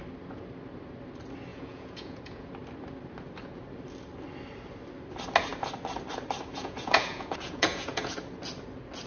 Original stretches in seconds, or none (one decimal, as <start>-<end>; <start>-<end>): 0.0-1.5; 2.5-6.5; 8.1-9.1